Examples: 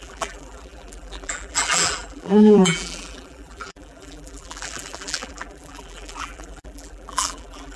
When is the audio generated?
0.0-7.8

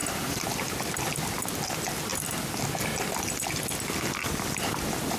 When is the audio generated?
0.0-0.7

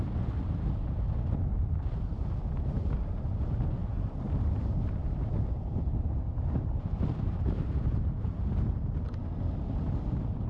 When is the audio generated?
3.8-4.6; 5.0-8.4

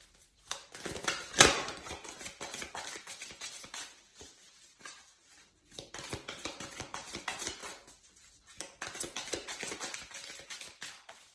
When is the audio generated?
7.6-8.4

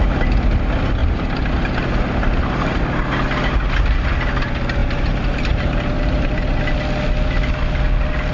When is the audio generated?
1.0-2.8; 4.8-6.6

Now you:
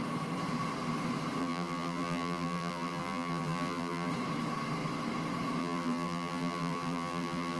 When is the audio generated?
1.4-4.1; 5.6-7.6

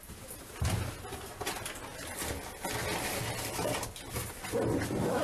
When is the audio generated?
none